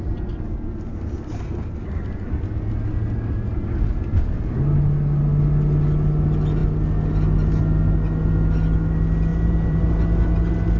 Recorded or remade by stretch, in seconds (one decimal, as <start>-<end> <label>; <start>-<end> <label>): 0.0-9.3 recorded; 9.3-9.9 remade; 9.9-10.8 recorded